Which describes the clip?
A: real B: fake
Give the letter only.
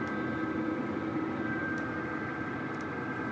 A